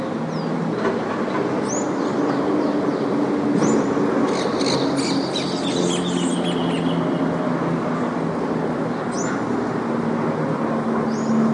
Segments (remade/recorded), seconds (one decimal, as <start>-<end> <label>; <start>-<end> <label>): 0.0-11.5 recorded